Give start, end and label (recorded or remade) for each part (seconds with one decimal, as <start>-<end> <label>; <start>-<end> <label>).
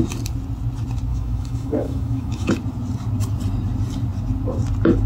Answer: 0.0-1.1 recorded; 1.1-2.5 remade; 2.5-5.1 recorded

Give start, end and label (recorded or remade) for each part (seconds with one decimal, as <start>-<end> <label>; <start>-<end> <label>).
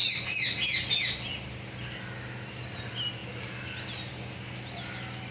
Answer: 0.0-0.9 remade; 0.9-5.3 recorded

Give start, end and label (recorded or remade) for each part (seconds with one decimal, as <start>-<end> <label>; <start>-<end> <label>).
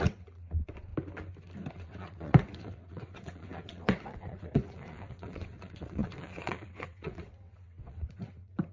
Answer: 0.0-0.9 remade; 0.9-1.7 recorded; 1.7-8.7 remade